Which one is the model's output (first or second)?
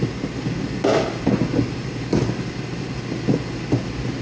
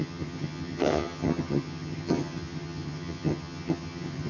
second